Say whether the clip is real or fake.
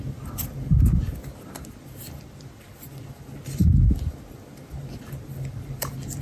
real